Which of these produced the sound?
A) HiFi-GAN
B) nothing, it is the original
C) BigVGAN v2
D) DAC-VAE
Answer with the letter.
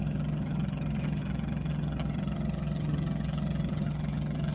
A